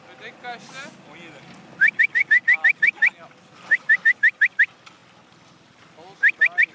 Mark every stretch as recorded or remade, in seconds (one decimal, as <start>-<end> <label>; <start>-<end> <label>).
0.0-6.7 recorded